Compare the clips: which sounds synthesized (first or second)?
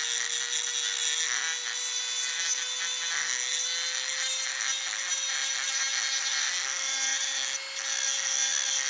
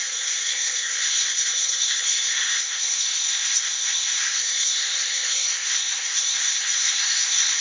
second